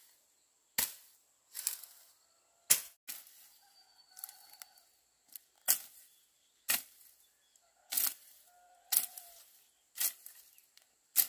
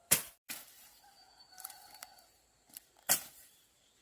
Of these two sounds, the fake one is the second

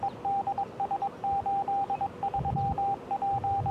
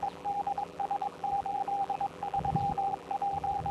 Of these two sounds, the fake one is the second